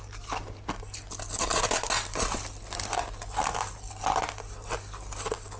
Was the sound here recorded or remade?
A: recorded